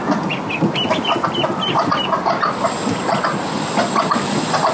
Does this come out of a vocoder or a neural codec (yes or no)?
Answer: no